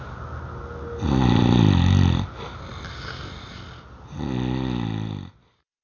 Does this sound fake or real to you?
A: real